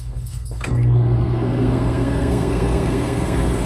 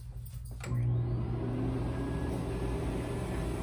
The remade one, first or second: first